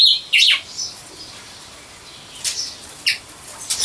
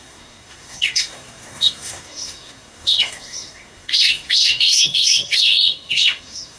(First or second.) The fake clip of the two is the second